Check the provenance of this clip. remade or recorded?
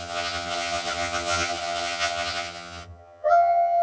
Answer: remade